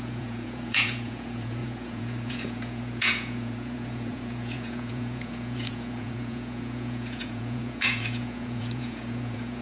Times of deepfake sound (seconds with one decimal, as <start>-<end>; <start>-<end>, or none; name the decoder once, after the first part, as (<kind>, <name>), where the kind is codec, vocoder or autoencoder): 0.0-9.6 (vocoder, Vocos)

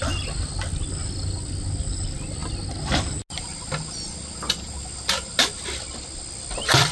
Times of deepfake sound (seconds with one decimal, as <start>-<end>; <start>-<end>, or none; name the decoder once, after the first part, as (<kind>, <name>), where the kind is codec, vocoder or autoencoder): none

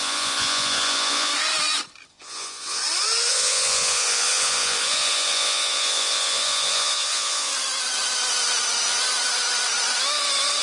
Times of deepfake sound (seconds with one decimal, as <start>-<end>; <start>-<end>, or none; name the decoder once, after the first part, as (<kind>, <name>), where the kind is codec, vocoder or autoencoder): 0.0-1.3 (vocoder, Vocos); 2.1-2.8; 3.3-7.5

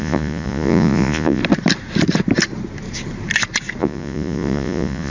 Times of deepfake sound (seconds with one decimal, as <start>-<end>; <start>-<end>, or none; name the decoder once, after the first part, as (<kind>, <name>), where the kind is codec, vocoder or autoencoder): 0.0-1.4 (vocoder, Vocos); 3.8-5.1

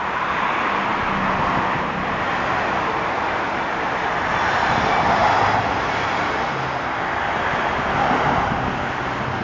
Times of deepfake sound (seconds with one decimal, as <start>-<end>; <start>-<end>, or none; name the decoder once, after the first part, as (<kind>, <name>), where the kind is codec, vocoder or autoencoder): none